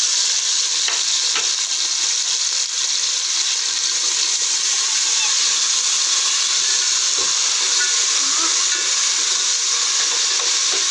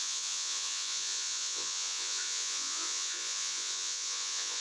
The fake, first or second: second